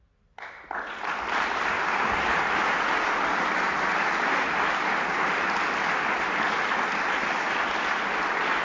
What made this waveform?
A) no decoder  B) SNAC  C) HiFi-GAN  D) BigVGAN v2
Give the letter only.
A